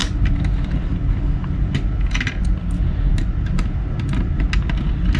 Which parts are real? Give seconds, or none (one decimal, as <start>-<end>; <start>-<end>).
0.0-5.2